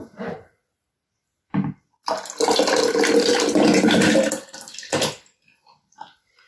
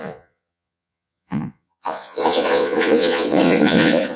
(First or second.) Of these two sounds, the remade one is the second